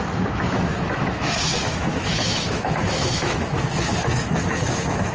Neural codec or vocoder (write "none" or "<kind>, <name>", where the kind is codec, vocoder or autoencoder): autoencoder, DAC-VAE